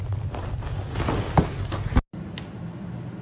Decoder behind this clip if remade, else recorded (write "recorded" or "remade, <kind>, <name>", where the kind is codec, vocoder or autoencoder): recorded